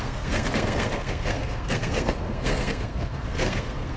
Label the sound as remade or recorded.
remade